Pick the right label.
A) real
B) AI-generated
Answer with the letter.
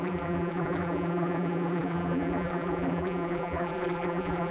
B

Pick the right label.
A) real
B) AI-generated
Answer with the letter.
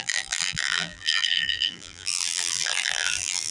B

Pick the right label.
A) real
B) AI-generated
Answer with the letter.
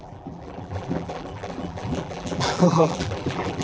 B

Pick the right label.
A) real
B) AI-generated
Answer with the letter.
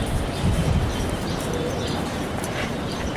B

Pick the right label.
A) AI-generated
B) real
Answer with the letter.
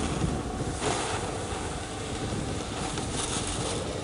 B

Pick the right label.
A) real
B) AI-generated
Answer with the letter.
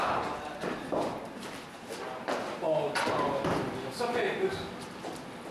B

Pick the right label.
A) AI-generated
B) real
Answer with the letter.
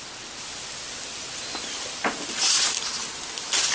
B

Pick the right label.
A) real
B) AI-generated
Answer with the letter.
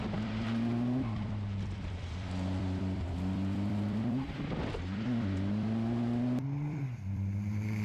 B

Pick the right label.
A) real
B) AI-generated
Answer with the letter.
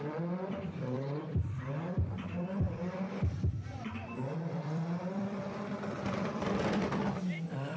B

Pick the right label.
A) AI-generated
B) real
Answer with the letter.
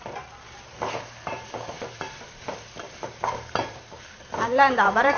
A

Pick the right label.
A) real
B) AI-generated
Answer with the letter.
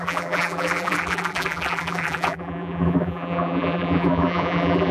B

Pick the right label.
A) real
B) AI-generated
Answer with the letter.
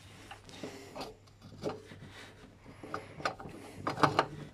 A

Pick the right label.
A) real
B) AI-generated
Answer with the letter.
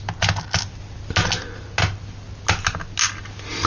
A